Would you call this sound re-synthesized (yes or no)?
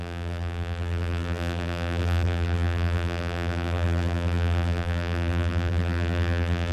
yes